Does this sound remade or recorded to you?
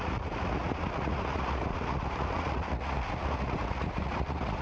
remade